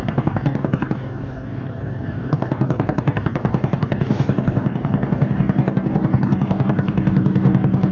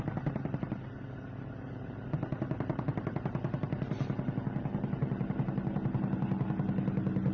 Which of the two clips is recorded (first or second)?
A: second